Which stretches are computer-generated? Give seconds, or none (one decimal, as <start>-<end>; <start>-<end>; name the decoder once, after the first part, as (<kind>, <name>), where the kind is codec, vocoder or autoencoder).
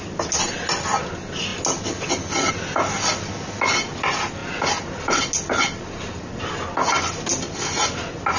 none